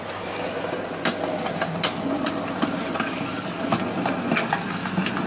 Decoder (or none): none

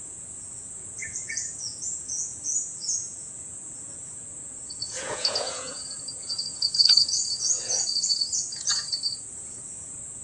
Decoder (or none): vocoder, Vocos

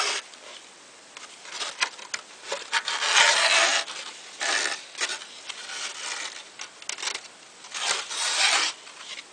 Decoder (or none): none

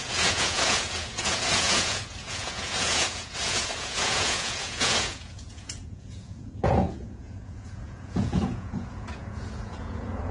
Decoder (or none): vocoder, Vocos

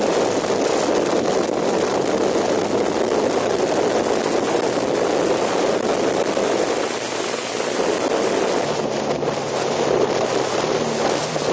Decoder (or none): none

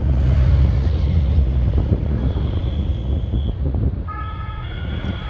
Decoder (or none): vocoder, Vocos